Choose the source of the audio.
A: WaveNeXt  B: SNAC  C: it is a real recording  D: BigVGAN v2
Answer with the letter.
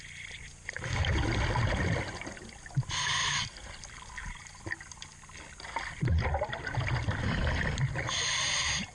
C